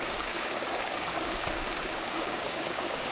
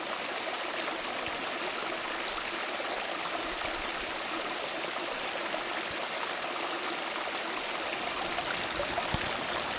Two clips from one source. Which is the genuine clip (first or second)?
second